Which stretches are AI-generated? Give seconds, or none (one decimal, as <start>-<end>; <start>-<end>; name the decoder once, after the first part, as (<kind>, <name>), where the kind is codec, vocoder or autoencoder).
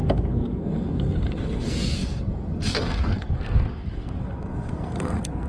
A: 0.0-5.5 (codec, SNAC)